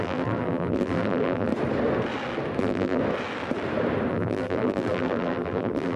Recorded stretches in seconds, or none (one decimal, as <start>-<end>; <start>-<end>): 1.5-2.6; 3.0-4.1